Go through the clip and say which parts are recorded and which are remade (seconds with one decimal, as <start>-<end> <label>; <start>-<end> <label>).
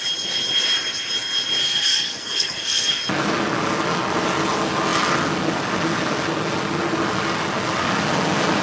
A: 0.0-1.6 recorded; 1.6-3.0 remade; 3.0-8.6 recorded